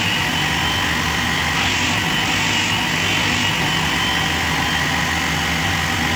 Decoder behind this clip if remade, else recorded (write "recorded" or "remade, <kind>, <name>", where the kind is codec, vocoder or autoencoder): recorded